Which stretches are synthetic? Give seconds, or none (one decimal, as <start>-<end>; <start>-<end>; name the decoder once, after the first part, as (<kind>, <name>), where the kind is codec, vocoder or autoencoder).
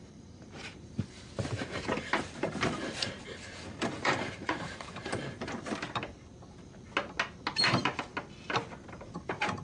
0.0-5.2 (vocoder, BigVGAN v2); 7.5-8.1; 8.9-9.6